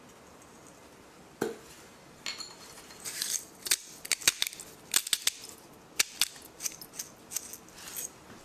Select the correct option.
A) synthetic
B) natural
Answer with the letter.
B